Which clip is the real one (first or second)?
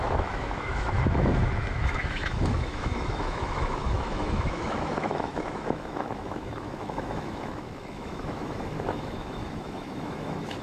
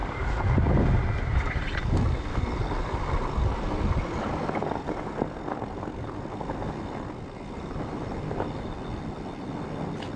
second